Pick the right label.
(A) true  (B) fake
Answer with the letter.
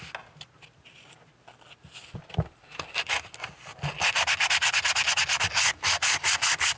A